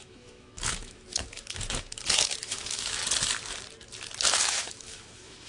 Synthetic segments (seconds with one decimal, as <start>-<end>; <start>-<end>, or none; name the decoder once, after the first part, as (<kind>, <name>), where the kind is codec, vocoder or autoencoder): 0.0-3.0 (autoencoder, DAC-VAE); 4.4-5.5